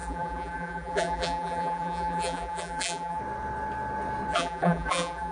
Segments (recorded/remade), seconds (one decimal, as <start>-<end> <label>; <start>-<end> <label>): 0.0-3.2 remade; 3.2-4.3 recorded; 4.3-5.3 remade